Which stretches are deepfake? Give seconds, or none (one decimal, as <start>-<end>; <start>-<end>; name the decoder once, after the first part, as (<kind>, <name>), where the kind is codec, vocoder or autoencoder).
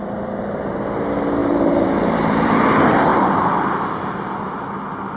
1.4-2.5 (vocoder, BigVGAN v2); 3.1-3.8